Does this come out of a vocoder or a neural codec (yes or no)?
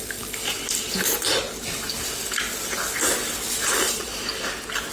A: no